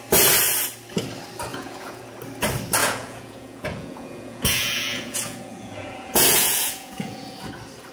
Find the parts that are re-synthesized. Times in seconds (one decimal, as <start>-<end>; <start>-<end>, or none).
1.5-2.0; 2.8-7.5